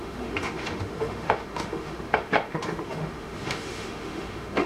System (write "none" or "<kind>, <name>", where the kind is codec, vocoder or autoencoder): autoencoder, DAC-VAE